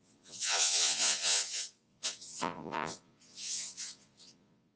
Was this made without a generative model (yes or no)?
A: no